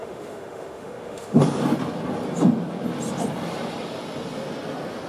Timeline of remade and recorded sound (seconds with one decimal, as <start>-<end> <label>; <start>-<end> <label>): 0.0-1.4 remade; 1.4-5.1 recorded

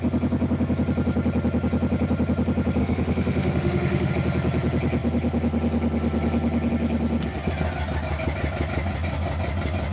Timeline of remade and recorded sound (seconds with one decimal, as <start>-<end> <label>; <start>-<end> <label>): 0.0-2.8 recorded; 2.8-4.1 remade; 4.1-9.9 recorded